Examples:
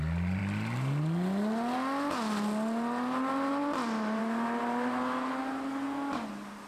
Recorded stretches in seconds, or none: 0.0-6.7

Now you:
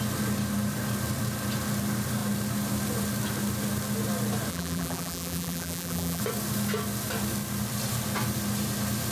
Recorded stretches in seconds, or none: 0.0-4.5; 6.2-9.1

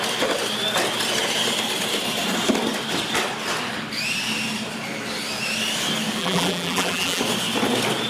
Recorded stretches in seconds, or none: 0.0-6.2; 7.2-8.1

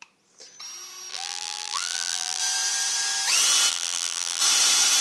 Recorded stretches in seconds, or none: 0.0-1.1; 2.4-3.7; 4.4-5.0

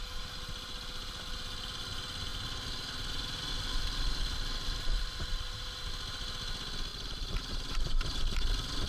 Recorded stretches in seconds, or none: 0.0-6.9; 8.5-8.9

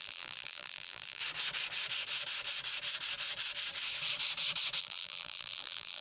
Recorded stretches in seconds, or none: 1.2-4.8

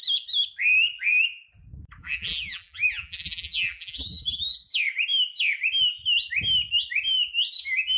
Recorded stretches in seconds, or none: 0.0-2.0; 4.6-7.5

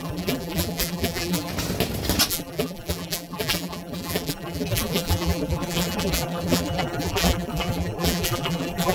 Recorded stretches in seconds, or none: 1.5-2.3